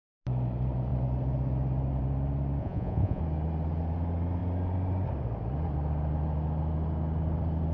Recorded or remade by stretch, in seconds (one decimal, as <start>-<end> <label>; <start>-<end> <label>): 0.0-2.6 recorded; 2.6-3.2 remade; 3.2-7.7 recorded